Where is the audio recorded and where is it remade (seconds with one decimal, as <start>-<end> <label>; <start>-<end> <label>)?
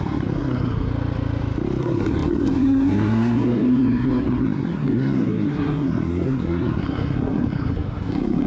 0.0-0.9 remade; 0.9-1.8 recorded; 1.8-8.5 remade